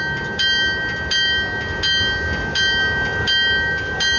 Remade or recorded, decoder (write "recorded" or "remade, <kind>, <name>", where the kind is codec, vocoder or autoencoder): recorded